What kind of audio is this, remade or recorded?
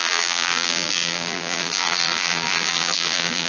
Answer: remade